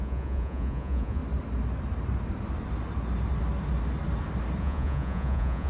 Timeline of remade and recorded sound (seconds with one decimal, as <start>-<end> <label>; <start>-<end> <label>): 0.0-1.2 remade; 1.2-4.6 recorded; 4.6-5.7 remade